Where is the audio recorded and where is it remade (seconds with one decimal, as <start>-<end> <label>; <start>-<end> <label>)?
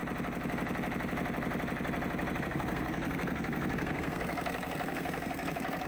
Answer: 0.0-2.4 recorded; 2.4-5.9 remade